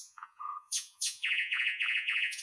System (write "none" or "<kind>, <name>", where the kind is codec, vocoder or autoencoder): vocoder, Vocos